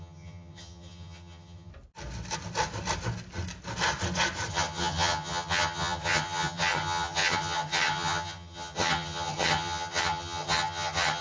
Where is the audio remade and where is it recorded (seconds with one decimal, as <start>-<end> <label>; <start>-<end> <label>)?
0.0-1.7 remade; 1.7-4.5 recorded; 4.5-11.2 remade